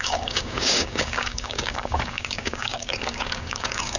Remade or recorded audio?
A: remade